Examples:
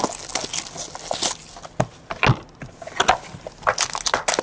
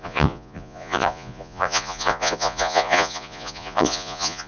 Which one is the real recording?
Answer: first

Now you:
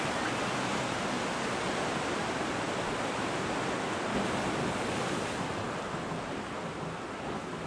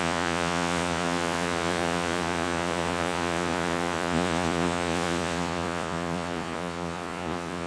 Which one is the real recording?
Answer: first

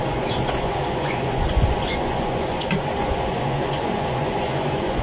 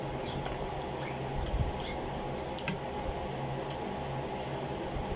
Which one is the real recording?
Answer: second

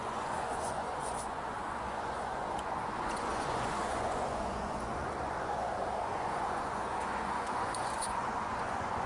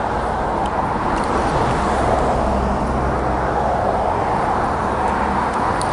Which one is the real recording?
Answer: second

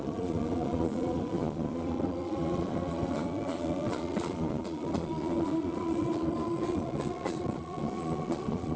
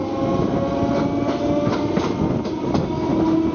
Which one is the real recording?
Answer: second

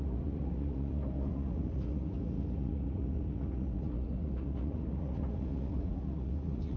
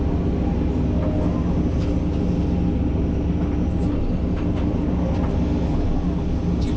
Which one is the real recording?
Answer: second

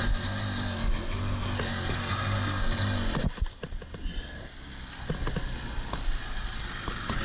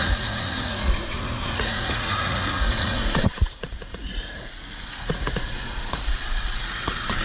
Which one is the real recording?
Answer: first